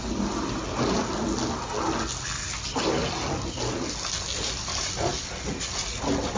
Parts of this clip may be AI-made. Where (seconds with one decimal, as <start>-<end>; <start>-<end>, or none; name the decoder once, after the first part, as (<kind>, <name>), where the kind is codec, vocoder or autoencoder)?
none